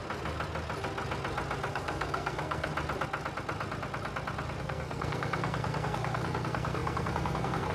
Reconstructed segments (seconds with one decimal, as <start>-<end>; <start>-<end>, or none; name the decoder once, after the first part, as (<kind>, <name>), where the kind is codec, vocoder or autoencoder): 1.7-2.7 (codec, SNAC); 4.6-7.7